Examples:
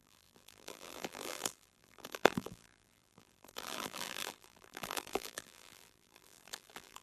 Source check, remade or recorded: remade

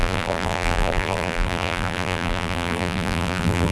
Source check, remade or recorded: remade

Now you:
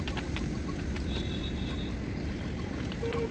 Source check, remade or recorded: remade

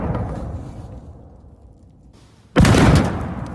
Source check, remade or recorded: recorded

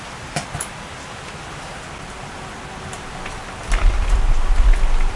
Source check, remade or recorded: remade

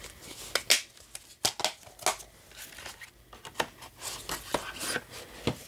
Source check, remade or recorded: recorded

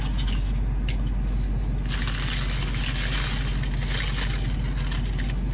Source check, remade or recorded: recorded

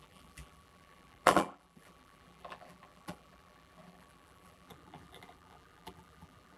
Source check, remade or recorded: remade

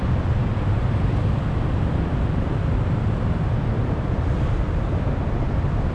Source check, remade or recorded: remade